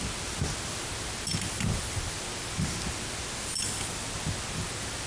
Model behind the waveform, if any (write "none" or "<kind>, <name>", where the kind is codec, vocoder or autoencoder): none